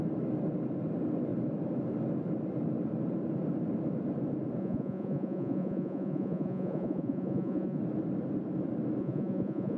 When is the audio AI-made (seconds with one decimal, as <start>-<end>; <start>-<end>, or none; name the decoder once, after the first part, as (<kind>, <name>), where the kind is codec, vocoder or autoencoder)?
4.6-7.8 (vocoder, Vocos); 9.0-9.8